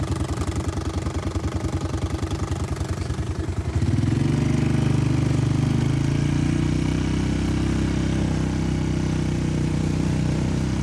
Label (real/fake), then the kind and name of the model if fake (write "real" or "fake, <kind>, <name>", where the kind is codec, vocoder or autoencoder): real